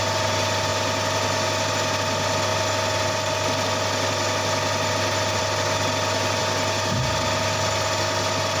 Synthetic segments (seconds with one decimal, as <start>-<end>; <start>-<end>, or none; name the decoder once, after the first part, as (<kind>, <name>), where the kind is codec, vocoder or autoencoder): none